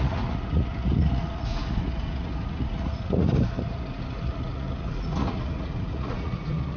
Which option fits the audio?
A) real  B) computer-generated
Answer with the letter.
B